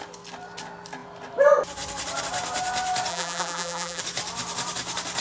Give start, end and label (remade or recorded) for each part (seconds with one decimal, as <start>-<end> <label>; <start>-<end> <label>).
0.0-3.1 recorded; 3.1-4.0 remade; 4.0-5.2 recorded